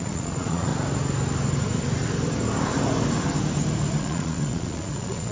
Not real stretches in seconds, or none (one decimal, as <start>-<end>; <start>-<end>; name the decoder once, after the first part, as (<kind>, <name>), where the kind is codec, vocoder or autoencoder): 0.0-0.7 (vocoder, Vocos); 3.9-5.3